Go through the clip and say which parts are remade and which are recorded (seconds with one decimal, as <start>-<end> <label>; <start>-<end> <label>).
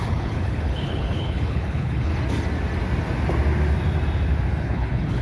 0.0-2.1 remade; 2.1-4.6 recorded; 4.6-5.2 remade